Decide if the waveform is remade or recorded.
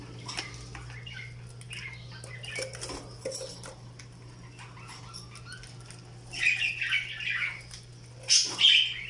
recorded